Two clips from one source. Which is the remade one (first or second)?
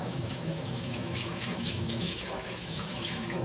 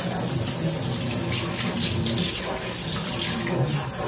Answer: first